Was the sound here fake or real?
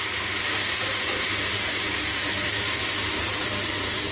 fake